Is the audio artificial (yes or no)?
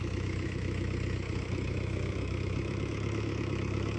yes